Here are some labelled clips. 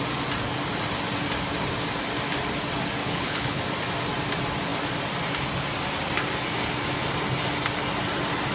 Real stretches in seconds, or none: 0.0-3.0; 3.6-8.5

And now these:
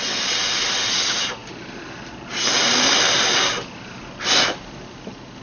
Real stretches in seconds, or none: 0.0-5.4

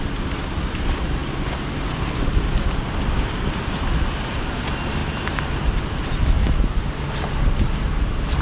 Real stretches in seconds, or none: 0.0-8.4

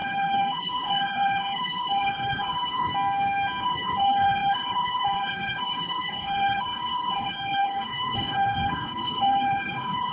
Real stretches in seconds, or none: 2.9-3.6

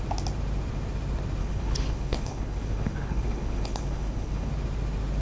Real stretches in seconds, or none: 0.0-1.4; 4.5-5.2